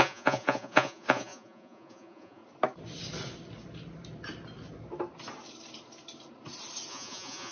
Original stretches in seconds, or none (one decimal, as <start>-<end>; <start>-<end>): 2.4-6.9